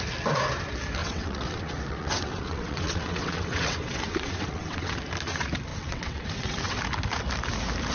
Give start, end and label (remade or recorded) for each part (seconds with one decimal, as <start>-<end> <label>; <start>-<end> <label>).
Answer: 0.0-1.0 recorded; 1.0-4.9 remade; 4.9-5.7 recorded; 5.7-6.8 remade; 6.8-7.9 recorded